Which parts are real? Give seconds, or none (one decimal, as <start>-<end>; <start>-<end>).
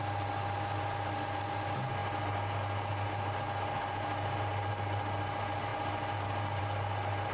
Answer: 0.0-7.3